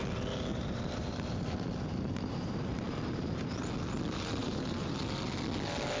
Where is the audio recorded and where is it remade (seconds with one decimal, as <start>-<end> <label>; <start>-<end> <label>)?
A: 0.0-0.5 recorded; 0.5-3.5 remade; 3.5-4.4 recorded; 4.4-5.0 remade; 5.0-6.0 recorded